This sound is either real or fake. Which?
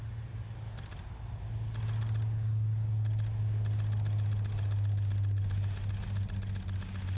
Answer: real